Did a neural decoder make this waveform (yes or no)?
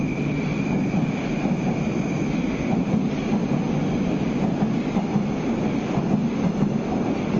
no